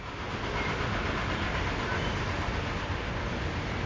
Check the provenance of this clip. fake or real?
real